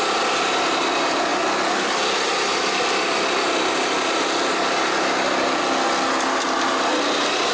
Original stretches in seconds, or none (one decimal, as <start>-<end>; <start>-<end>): 0.0-7.5